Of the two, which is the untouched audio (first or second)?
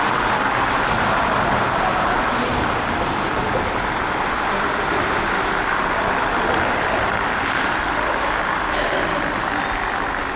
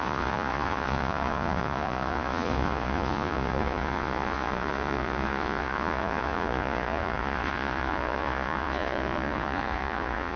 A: first